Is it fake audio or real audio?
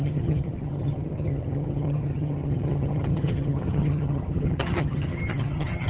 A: fake